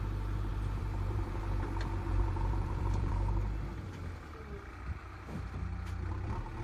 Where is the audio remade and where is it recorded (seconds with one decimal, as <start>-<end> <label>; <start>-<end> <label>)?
0.0-0.5 recorded; 0.5-1.4 remade; 1.4-2.1 recorded; 2.1-3.1 remade; 3.1-6.6 recorded

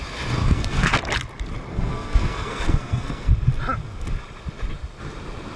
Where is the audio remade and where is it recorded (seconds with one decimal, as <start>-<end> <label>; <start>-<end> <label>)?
0.0-0.4 recorded; 0.4-1.0 remade; 1.0-1.7 recorded; 1.7-3.3 remade; 3.3-5.6 recorded

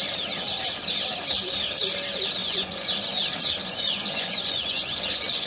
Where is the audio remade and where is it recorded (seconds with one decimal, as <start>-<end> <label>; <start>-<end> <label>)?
0.0-2.4 recorded; 2.4-3.2 remade; 3.2-3.6 recorded; 3.6-5.5 remade

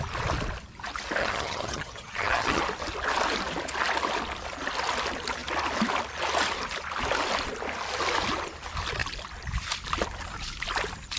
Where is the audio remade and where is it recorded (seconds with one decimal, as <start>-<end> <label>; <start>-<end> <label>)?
0.0-1.2 recorded; 1.2-2.6 remade; 2.6-11.2 recorded

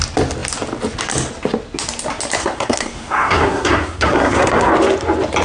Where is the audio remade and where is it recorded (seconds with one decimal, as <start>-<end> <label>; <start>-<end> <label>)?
0.0-2.4 recorded; 2.4-4.7 remade; 4.7-5.4 recorded

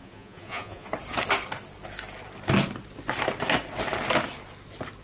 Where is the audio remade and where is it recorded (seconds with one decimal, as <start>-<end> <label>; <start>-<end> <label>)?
0.0-0.9 remade; 0.9-5.0 recorded